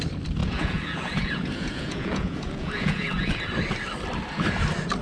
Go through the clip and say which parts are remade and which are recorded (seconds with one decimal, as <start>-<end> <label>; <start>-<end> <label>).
0.0-0.4 recorded; 0.4-3.4 remade; 3.4-5.0 recorded